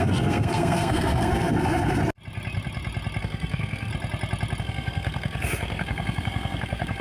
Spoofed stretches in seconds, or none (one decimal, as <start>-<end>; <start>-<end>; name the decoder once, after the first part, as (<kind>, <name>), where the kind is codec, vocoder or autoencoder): 0.0-2.0 (codec, SNAC); 3.2-3.9; 4.6-7.0